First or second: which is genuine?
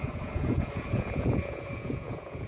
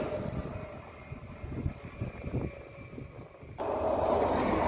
second